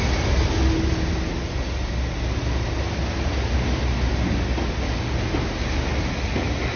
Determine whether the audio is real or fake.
real